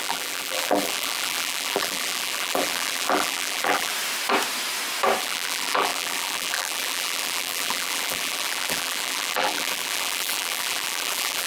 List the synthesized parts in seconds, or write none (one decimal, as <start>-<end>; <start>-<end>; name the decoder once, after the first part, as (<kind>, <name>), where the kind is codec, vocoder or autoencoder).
0.0-3.9 (vocoder, BigVGAN v2); 5.2-11.5